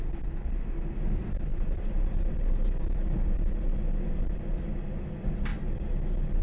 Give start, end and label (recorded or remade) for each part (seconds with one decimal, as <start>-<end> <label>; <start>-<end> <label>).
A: 0.0-1.5 recorded; 1.5-4.4 remade; 4.4-6.4 recorded